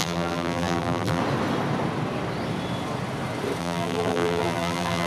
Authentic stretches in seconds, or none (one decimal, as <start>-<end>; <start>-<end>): 1.2-3.6